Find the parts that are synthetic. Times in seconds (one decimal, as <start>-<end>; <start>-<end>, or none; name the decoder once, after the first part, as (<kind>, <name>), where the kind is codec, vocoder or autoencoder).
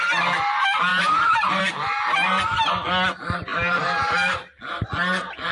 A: 0.9-1.6 (vocoder, BigVGAN v2); 3.5-4.6